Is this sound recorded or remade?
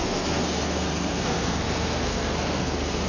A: remade